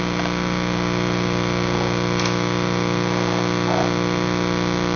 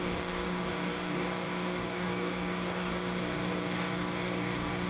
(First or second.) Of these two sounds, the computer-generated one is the second